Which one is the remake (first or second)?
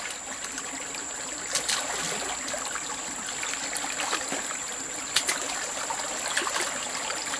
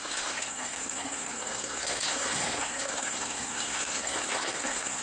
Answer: second